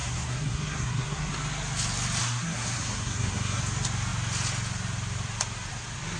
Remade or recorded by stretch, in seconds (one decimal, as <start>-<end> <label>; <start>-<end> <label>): 0.0-1.3 remade; 1.3-2.2 recorded; 2.2-3.6 remade; 3.6-6.2 recorded